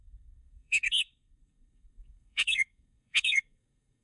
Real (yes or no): no